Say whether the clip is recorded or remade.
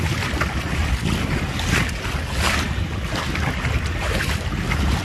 recorded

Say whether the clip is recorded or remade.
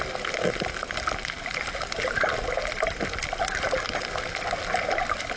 recorded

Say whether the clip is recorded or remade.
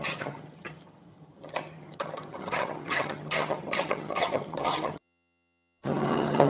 remade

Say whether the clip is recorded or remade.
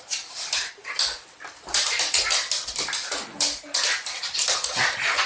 recorded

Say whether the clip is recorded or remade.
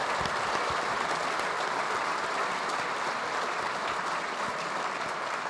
remade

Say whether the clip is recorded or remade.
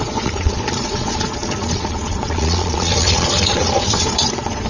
remade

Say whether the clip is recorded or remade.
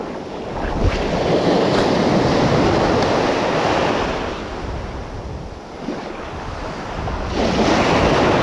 recorded